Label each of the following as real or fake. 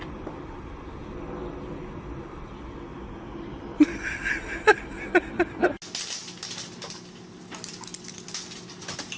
real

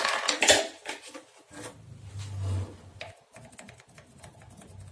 real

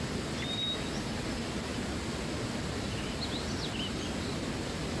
real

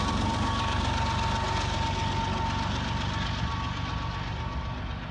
real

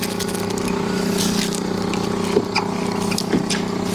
real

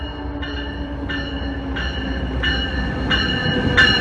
real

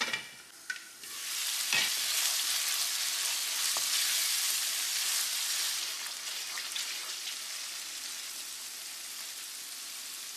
real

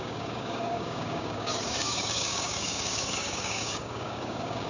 fake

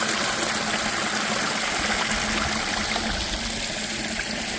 real